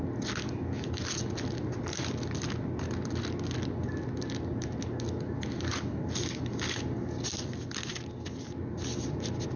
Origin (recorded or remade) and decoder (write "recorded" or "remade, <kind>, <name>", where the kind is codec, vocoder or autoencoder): recorded